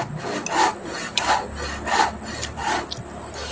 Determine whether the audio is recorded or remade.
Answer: recorded